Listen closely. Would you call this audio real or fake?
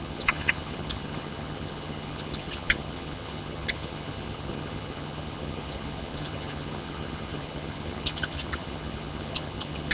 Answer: fake